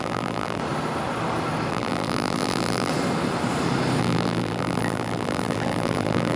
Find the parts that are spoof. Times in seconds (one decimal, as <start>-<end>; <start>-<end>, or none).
0.0-0.6; 1.7-2.9; 4.0-6.4